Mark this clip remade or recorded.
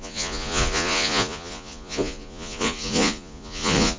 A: remade